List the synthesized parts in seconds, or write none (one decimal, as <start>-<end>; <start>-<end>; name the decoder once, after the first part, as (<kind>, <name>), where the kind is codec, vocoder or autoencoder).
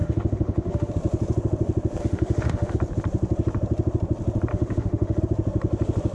0.0-0.9 (autoencoder, DAC-VAE); 2.0-2.7; 4.5-5.2